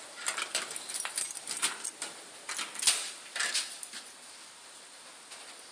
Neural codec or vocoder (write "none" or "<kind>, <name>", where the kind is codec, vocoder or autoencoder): none